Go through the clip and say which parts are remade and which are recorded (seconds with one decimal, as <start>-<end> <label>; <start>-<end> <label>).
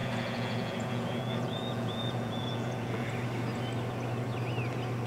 0.0-3.1 remade; 3.1-5.1 recorded